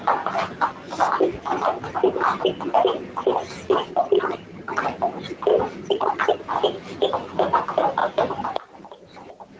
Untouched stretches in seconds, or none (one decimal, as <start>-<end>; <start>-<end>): 0.0-3.9; 4.8-5.8; 6.4-9.6